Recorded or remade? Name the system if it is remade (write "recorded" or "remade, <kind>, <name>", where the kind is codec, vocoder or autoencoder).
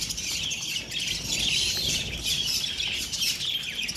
recorded